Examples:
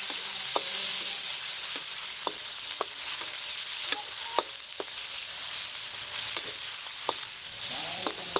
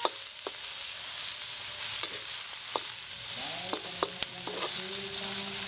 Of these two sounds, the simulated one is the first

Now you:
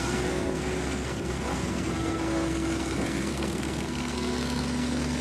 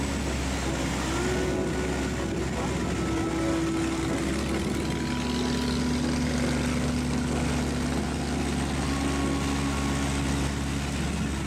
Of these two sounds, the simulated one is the first